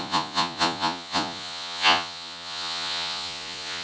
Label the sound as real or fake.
fake